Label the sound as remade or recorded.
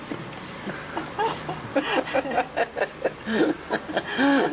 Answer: recorded